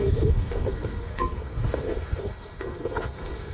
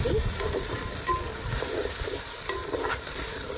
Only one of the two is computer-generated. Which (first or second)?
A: first